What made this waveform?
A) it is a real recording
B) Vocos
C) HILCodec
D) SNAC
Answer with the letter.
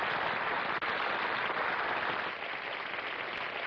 A